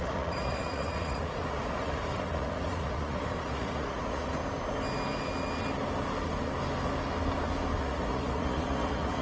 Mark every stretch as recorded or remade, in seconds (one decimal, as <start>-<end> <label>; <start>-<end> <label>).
0.0-4.4 remade; 4.4-7.8 recorded; 7.8-9.2 remade